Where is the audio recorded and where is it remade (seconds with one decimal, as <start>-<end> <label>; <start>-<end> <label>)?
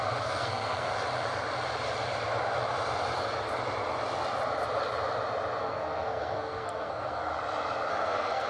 0.0-0.9 remade; 0.9-5.6 recorded; 5.6-7.3 remade; 7.3-7.9 recorded; 7.9-8.5 remade